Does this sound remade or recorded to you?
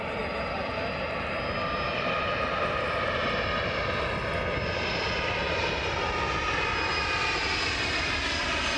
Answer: recorded